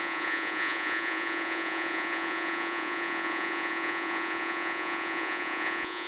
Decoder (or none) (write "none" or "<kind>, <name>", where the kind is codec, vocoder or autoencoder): vocoder, Vocos